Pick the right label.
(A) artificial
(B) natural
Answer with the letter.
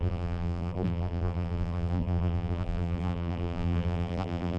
A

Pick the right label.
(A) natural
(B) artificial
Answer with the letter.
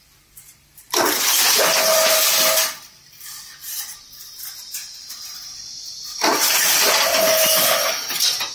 B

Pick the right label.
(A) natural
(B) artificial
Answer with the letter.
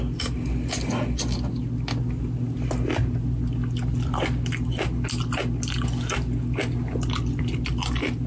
A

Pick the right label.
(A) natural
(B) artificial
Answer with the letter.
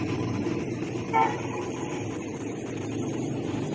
B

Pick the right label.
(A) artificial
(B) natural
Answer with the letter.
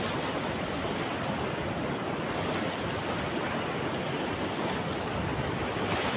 B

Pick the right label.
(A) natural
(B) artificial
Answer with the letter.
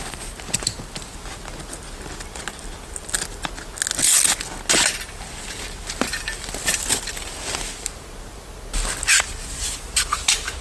A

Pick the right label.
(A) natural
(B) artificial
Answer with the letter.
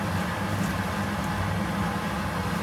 A